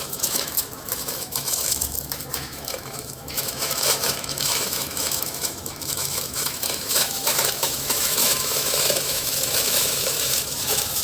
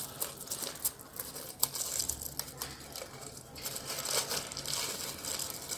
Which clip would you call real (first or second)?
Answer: second